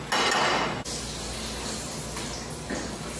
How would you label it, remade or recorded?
recorded